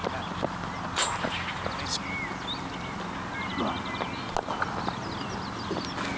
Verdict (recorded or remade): recorded